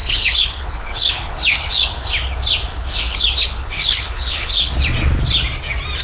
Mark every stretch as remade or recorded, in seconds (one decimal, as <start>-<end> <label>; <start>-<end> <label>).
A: 0.0-2.1 remade; 2.1-2.7 recorded; 2.7-4.7 remade; 4.7-6.0 recorded